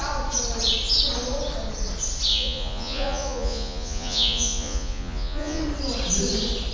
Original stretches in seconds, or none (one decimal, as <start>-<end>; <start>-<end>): 0.0-2.3; 5.6-6.7